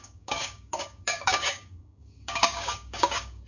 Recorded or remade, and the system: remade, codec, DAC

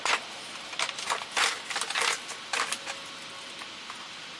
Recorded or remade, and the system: recorded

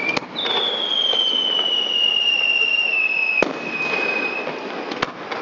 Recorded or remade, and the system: recorded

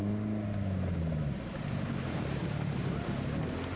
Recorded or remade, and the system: recorded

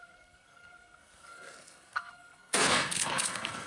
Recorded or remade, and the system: remade, codec, SNAC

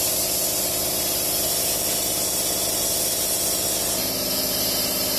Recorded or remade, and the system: recorded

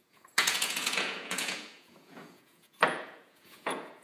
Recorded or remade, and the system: remade, vocoder, Vocos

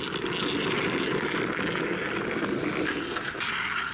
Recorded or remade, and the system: recorded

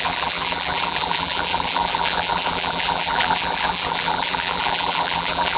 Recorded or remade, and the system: remade, vocoder, BigVGAN v2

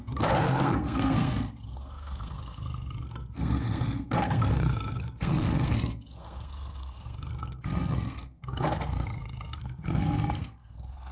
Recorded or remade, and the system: remade, codec, SNAC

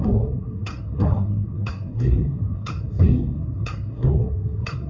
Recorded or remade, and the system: remade, codec, SNAC